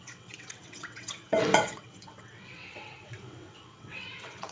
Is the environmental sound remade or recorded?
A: remade